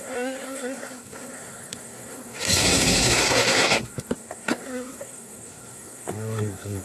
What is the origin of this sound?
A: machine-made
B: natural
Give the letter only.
A